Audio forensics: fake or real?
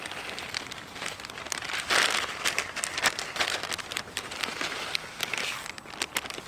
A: real